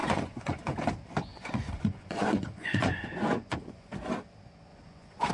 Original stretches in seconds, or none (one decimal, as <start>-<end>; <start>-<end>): 0.8-1.3; 3.9-4.7